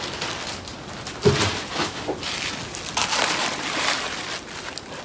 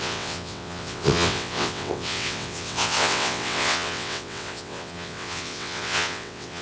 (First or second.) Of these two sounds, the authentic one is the first